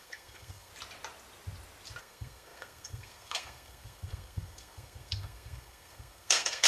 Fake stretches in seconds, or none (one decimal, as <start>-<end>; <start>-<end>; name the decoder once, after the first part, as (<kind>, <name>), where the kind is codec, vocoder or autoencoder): 0.0-0.7 (codec, SNAC); 2.0-6.7